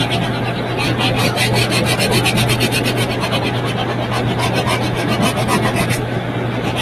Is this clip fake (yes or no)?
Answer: no